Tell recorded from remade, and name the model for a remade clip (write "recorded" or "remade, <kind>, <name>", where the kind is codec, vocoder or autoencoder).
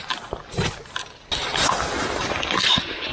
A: recorded